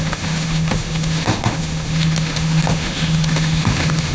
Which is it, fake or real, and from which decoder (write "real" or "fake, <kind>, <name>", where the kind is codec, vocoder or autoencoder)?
fake, autoencoder, DAC-VAE